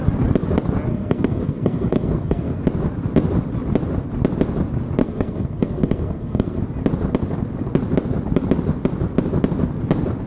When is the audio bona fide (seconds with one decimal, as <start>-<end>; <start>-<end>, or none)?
0.0-0.9; 2.6-5.0; 6.6-10.3

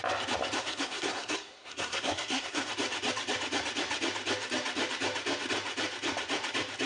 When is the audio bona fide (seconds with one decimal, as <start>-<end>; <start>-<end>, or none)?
0.0-0.6; 2.7-6.9

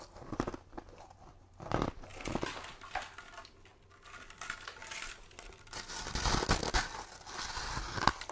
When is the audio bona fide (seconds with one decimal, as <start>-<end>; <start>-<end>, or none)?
0.0-8.3

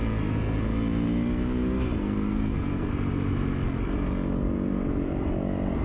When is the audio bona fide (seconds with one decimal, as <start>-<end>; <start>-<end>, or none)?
0.0-2.0; 2.9-5.8

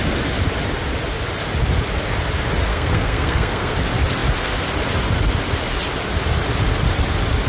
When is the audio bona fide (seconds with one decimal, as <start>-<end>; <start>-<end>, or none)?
0.0-2.7; 3.8-7.5

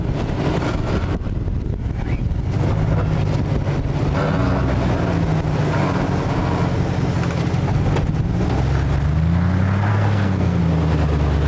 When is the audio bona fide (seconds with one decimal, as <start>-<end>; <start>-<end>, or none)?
0.0-9.9; 10.6-11.5

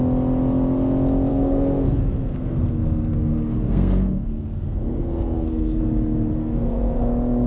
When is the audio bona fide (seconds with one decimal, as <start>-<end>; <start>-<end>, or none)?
0.0-1.3; 5.8-6.4; 7.1-7.5

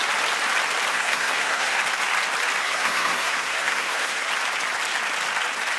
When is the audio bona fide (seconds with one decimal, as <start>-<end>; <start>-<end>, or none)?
0.0-0.9; 1.8-2.6; 4.3-5.8